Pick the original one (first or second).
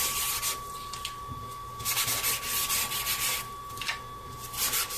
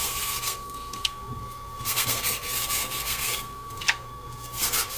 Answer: first